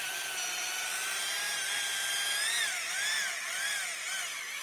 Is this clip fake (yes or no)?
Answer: no